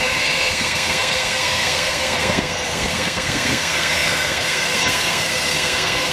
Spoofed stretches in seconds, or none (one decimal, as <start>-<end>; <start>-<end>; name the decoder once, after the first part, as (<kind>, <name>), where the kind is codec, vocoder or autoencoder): 0.0-6.1 (codec, SNAC)